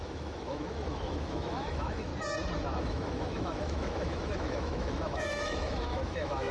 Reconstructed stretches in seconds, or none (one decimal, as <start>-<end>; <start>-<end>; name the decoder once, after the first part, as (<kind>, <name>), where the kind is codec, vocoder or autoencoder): 0.0-2.1 (autoencoder, DAC-VAE); 2.8-6.5